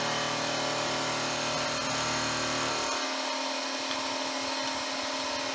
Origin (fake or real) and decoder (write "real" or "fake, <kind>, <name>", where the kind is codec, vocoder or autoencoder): real